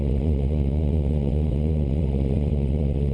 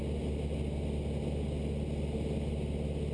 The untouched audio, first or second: second